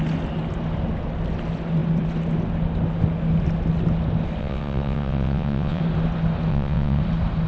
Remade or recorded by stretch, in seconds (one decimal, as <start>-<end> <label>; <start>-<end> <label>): 0.0-4.4 recorded; 4.4-5.8 remade; 5.8-6.5 recorded; 6.5-7.0 remade; 7.0-7.5 recorded